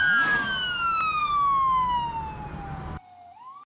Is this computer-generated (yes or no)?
no